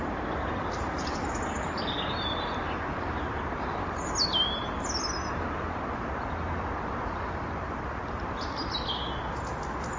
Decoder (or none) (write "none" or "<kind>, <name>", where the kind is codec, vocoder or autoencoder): none